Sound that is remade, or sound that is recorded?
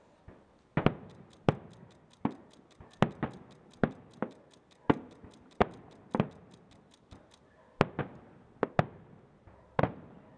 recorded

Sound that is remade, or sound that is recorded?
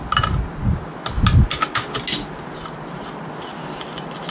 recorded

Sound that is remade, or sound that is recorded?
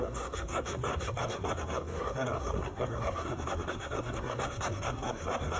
remade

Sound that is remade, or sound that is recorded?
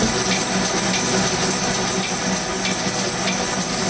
recorded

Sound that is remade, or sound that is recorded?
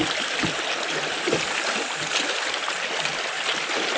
recorded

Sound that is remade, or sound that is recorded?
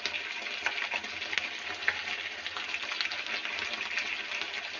recorded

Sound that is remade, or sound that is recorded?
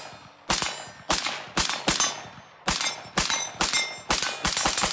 recorded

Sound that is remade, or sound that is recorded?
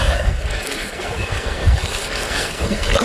remade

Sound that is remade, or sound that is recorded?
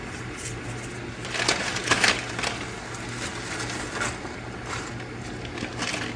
recorded